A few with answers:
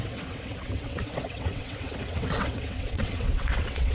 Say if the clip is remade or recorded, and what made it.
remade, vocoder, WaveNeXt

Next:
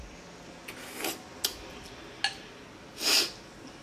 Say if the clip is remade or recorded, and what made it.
recorded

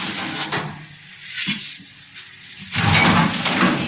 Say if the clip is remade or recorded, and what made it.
recorded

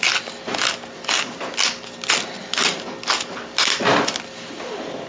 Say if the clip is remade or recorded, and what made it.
recorded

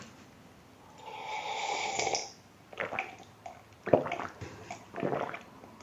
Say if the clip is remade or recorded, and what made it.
recorded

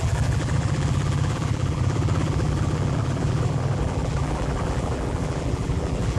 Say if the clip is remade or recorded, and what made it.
remade, vocoder, BigVGAN v2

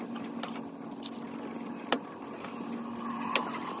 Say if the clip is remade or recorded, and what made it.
recorded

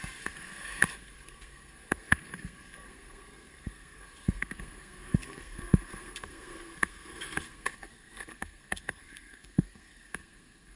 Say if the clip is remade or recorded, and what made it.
remade, codec, SNAC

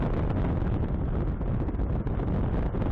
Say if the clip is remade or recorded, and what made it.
recorded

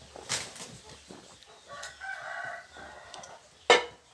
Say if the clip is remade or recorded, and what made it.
recorded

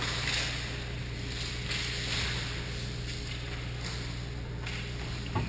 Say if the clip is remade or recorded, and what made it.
recorded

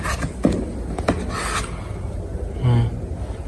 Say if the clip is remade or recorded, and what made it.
recorded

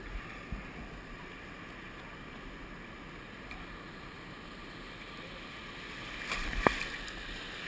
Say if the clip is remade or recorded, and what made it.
recorded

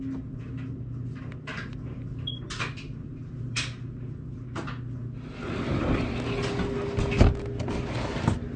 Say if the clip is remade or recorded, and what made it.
recorded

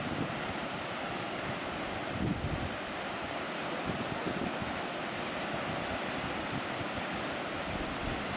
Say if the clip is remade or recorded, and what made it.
recorded